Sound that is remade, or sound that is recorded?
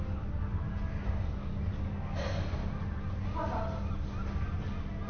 recorded